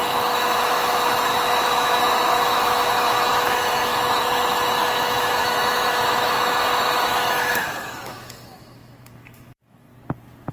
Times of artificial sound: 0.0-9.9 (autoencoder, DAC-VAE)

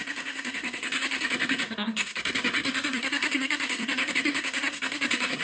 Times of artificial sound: 0.0-5.4 (codec, SNAC)

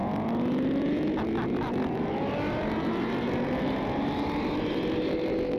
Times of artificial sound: none